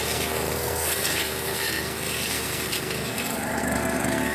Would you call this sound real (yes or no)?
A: no